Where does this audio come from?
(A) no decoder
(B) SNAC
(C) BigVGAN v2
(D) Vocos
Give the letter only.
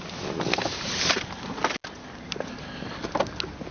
A